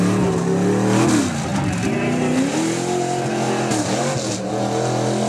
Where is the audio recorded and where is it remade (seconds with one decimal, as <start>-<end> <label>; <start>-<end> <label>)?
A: 0.0-5.3 recorded